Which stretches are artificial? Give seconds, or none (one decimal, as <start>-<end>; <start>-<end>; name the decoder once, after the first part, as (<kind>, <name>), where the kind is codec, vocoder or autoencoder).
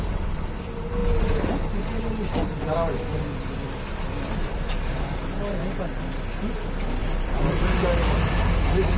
3.3-5.2 (vocoder, BigVGAN v2); 7.0-7.9